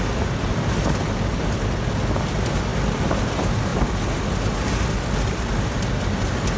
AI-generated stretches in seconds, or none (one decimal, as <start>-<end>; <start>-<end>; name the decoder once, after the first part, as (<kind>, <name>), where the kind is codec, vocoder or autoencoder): none